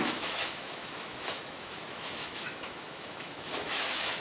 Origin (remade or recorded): remade